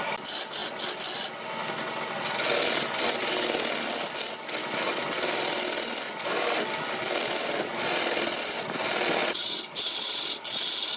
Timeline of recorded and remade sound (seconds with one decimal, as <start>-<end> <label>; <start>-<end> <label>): 0.0-7.7 recorded; 7.7-8.5 remade; 8.5-9.2 recorded; 9.2-10.6 remade; 10.6-11.0 recorded